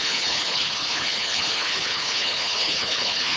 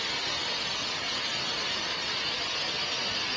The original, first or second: second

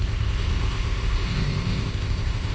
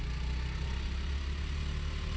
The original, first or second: second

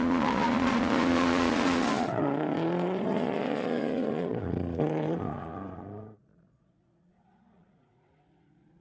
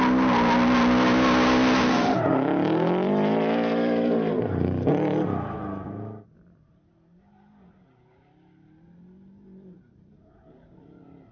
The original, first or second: second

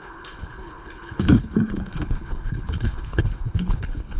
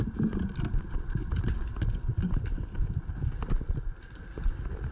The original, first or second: second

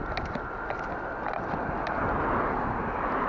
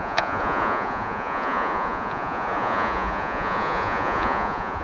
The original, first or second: first